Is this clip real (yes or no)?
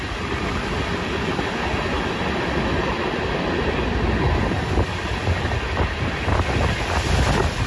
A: yes